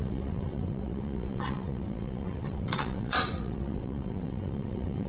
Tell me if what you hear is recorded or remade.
remade